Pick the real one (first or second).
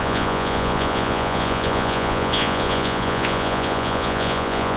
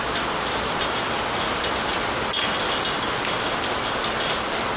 second